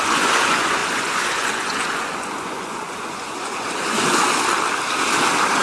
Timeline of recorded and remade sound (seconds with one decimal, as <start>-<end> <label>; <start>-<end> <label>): 0.0-4.2 remade; 4.2-5.6 recorded